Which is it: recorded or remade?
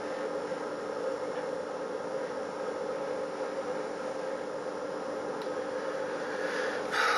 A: recorded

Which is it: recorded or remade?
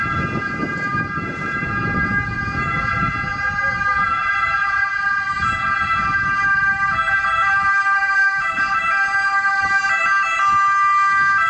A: recorded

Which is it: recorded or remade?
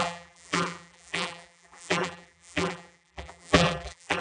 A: remade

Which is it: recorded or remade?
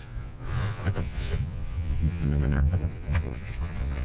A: remade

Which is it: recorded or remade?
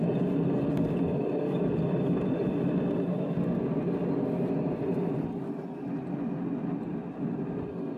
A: recorded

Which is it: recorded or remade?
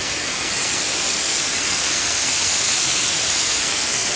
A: remade